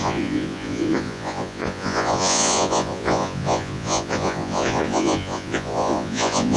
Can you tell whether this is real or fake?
fake